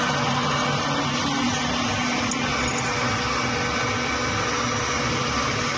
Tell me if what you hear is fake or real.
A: real